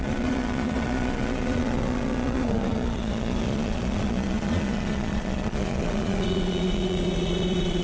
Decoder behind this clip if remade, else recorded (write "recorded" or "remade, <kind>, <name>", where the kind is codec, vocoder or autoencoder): remade, vocoder, Vocos